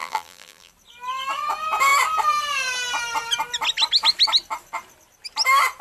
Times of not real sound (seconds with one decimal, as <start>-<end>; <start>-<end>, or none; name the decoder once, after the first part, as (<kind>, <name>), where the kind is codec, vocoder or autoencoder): 0.0-0.7 (vocoder, BigVGAN v2)